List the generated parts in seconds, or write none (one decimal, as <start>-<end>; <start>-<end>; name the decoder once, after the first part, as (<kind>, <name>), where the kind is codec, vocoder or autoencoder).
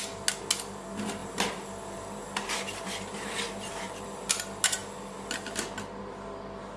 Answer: 1.2-4.3 (vocoder, BigVGAN v2)